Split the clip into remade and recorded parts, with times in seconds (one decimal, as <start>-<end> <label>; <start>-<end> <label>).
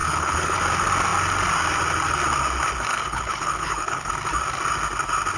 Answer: 0.0-0.6 remade; 0.6-2.9 recorded; 2.9-4.1 remade; 4.1-5.4 recorded